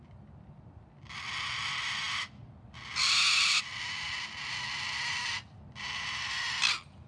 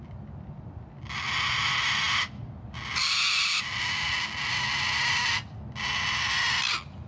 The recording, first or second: second